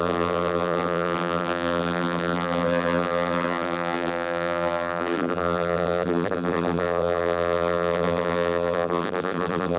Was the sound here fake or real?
fake